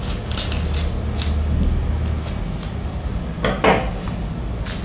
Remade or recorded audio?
recorded